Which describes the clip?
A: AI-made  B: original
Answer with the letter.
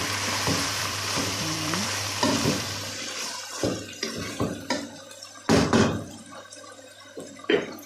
A